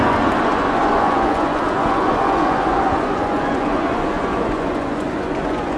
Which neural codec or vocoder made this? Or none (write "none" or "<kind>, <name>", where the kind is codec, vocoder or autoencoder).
vocoder, Vocos